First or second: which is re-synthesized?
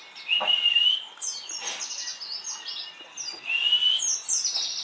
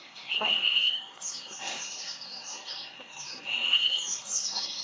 second